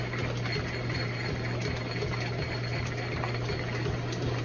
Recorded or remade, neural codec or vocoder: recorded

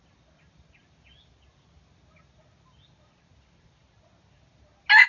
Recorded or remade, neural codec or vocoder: recorded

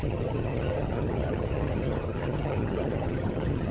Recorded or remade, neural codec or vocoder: remade, vocoder, HiFi-GAN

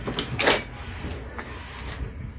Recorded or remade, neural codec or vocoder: recorded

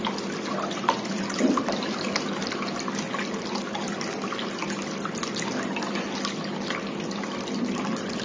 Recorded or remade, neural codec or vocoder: recorded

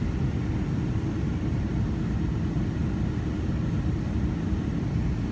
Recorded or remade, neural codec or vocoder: recorded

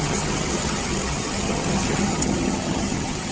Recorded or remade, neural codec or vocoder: remade, vocoder, HiFi-GAN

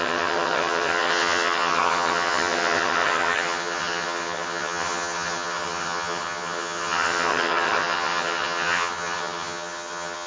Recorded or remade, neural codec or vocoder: remade, vocoder, HiFi-GAN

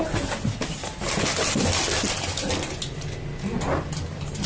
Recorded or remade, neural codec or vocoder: recorded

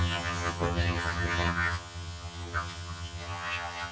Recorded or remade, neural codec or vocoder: remade, vocoder, HiFi-GAN